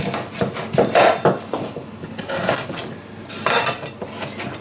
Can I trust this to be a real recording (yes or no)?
yes